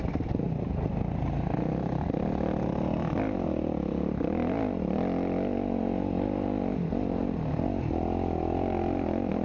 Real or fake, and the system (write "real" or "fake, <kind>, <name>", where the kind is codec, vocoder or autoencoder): real